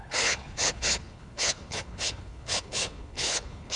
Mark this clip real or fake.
fake